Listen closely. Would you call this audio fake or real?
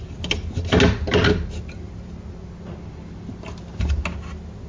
real